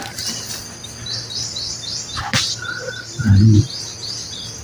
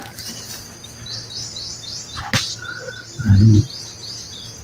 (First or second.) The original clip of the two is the second